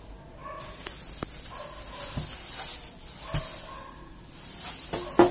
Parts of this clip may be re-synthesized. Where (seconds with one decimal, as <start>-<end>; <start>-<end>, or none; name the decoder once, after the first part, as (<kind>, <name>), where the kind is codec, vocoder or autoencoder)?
none